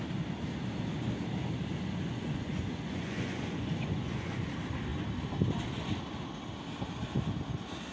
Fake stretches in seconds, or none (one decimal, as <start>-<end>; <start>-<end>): 1.7-4.5